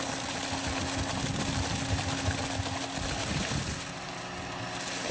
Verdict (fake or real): real